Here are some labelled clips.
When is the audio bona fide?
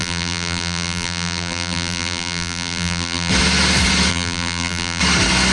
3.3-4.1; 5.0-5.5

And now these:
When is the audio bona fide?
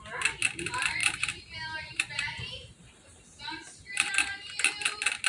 0.0-1.0; 4.1-5.3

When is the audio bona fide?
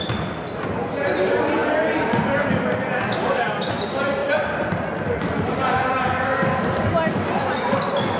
0.0-4.2; 5.2-8.2